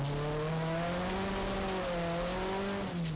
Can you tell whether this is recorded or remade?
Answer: recorded